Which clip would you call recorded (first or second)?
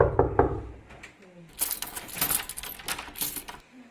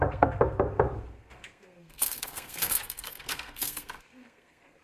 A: first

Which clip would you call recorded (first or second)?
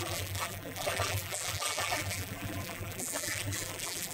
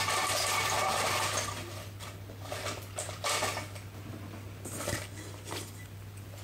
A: second